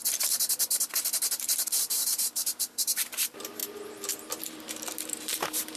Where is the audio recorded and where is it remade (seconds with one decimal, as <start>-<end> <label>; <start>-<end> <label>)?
0.0-1.8 recorded; 1.8-3.6 remade; 3.6-4.4 recorded; 4.4-5.8 remade